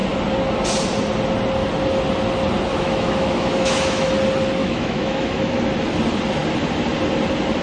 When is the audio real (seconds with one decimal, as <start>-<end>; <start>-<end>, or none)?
0.0-2.7; 4.1-4.6; 5.6-7.6